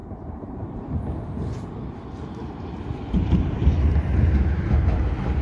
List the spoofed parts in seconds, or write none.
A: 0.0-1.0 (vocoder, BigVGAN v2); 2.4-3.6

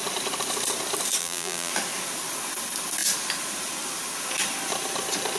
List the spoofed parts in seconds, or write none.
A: 1.2-1.7 (vocoder, BigVGAN v2)

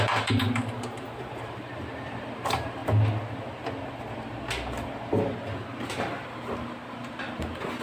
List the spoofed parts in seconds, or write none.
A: 0.0-2.8 (vocoder, BigVGAN v2)

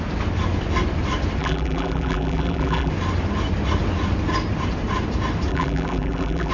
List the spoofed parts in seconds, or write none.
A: 1.4-2.9 (vocoder, BigVGAN v2); 5.5-6.5